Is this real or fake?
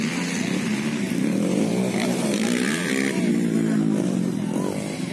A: fake